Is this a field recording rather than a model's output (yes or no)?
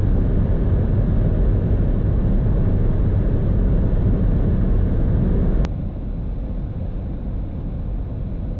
yes